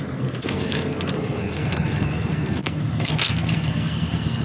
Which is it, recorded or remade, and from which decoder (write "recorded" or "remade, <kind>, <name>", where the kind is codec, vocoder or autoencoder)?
remade, codec, SNAC